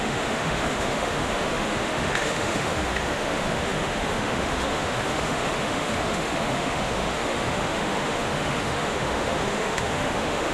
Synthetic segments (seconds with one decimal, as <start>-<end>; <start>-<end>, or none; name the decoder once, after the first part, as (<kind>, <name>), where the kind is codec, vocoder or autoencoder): 0.0-10.5 (autoencoder, DAC-VAE)